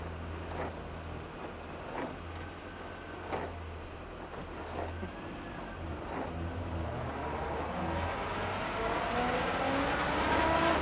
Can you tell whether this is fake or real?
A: real